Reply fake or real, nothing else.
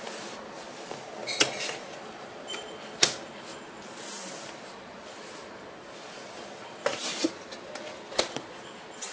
real